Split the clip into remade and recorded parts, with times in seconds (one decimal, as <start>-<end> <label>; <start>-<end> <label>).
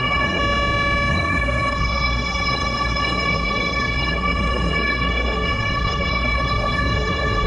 0.0-0.4 remade; 0.4-1.1 recorded; 1.1-7.5 remade